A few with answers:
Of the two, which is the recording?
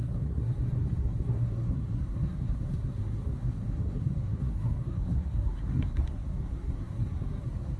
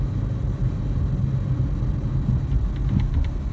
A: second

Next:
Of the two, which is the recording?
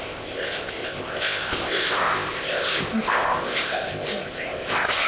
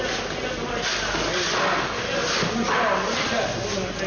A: second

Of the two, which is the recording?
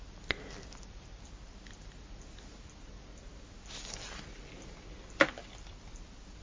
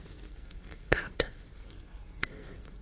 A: first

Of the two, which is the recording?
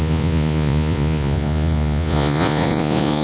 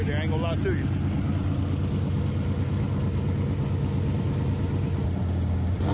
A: second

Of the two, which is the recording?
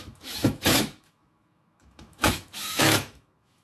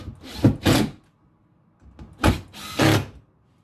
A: second